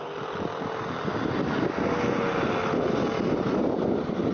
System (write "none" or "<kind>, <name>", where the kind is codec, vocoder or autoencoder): none